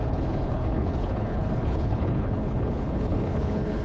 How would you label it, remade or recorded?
remade